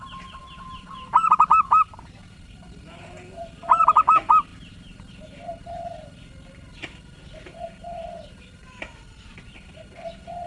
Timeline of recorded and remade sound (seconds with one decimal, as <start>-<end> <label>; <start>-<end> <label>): 0.0-4.5 recorded; 4.5-5.6 remade; 5.6-10.5 recorded